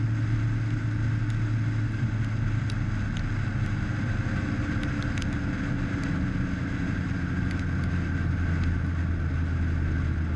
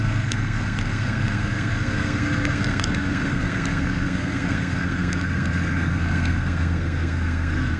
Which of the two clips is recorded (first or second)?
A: first